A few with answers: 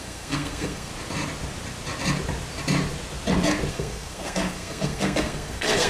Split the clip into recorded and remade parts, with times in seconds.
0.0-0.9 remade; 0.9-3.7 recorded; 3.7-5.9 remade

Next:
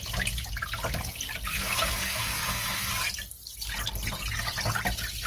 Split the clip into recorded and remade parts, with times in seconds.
0.0-1.5 recorded; 1.5-2.9 remade; 2.9-5.3 recorded